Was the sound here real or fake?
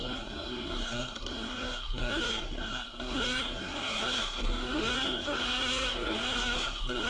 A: fake